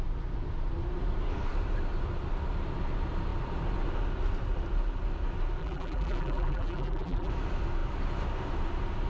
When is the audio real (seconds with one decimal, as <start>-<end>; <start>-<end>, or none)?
0.0-5.6; 7.3-9.1